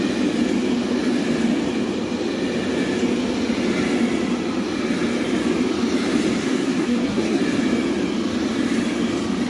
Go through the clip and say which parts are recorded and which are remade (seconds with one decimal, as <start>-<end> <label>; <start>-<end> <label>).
0.0-6.4 recorded; 6.4-7.4 remade; 7.4-9.5 recorded